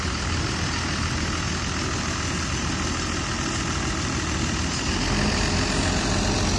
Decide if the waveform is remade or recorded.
recorded